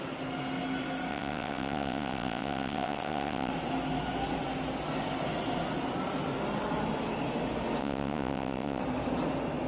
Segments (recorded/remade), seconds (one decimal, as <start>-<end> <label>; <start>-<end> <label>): 0.0-1.1 recorded; 1.1-3.5 remade; 3.5-7.8 recorded; 7.8-8.8 remade; 8.8-9.7 recorded